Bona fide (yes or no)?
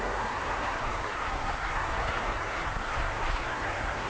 no